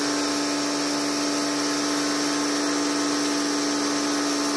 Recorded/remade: recorded